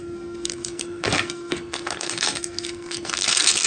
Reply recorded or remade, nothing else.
remade